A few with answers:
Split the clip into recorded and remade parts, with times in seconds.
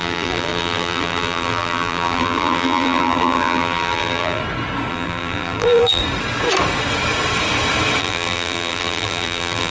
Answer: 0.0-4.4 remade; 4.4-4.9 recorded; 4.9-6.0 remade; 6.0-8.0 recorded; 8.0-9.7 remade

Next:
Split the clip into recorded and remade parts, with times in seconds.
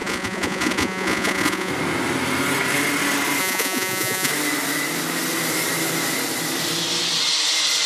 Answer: 0.0-1.7 remade; 1.7-3.4 recorded; 3.4-4.3 remade; 4.3-7.9 recorded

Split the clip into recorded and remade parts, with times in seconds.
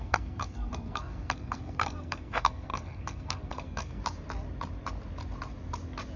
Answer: 0.0-4.0 remade; 4.0-6.2 recorded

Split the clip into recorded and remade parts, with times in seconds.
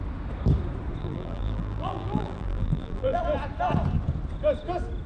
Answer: 0.0-1.0 recorded; 1.0-3.2 remade; 3.2-5.1 recorded